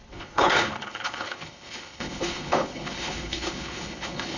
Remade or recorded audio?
remade